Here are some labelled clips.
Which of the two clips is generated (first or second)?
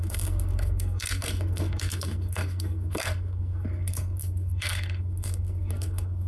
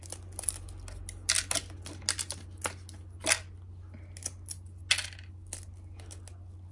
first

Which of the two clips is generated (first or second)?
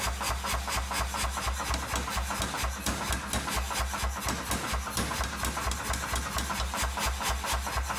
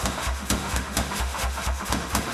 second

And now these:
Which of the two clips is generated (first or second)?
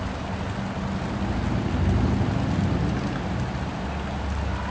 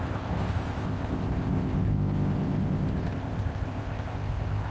second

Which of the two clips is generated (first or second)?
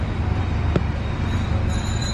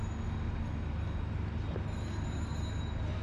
first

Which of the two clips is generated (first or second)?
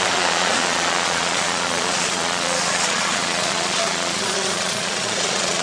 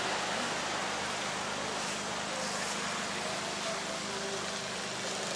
first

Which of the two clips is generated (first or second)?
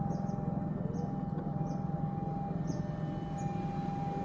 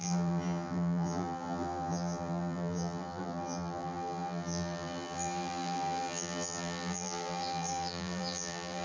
second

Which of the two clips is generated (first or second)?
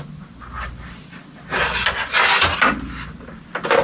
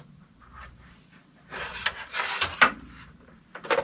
second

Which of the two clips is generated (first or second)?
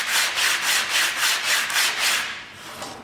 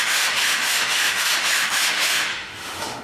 second